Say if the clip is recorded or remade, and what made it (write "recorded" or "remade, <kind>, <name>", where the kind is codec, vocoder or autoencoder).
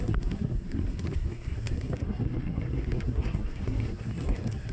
remade, codec, SNAC